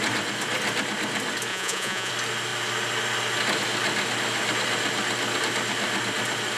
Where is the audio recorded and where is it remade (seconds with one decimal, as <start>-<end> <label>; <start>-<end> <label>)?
0.0-1.5 recorded; 1.5-2.1 remade; 2.1-6.6 recorded